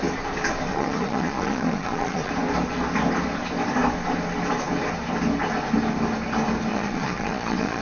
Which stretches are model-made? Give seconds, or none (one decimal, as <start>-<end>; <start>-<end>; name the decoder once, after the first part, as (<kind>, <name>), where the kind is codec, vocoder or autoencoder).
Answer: 0.7-2.3 (vocoder, Vocos); 6.7-7.8